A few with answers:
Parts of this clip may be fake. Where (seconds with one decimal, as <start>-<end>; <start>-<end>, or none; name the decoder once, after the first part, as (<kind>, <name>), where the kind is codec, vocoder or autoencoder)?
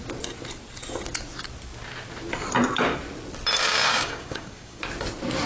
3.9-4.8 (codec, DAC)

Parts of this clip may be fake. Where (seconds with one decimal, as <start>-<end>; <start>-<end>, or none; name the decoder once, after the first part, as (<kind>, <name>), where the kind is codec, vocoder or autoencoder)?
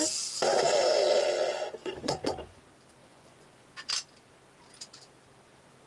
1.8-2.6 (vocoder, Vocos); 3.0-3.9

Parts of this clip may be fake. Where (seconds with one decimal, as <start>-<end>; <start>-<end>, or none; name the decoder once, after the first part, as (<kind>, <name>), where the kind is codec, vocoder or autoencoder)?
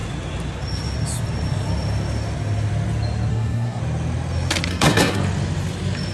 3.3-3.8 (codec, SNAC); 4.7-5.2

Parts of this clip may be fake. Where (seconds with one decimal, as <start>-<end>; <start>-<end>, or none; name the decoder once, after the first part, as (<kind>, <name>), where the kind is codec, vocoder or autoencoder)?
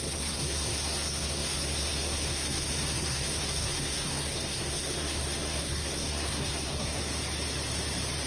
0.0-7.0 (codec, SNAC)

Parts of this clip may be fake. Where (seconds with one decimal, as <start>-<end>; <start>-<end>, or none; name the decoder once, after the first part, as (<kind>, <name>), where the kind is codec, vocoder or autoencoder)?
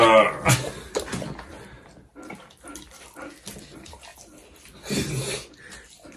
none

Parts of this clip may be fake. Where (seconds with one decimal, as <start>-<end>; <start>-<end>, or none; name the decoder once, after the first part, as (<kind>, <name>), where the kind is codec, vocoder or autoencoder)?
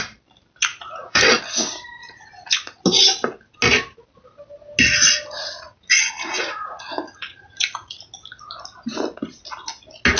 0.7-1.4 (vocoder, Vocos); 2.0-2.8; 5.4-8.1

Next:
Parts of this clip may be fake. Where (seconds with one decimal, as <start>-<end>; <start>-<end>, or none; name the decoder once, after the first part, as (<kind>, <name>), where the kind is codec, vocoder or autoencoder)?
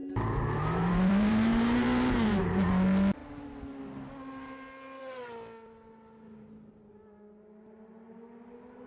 0.0-2.7 (vocoder, BigVGAN v2)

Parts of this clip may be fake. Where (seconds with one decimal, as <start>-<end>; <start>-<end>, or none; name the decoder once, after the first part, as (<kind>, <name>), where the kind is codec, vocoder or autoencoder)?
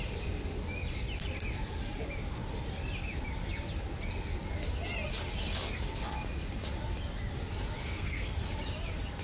7.8-8.4 (codec, SNAC)